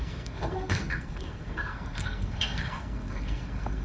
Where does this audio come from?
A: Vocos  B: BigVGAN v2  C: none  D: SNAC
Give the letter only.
D